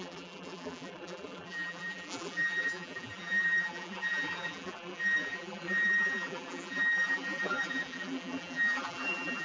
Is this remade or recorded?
remade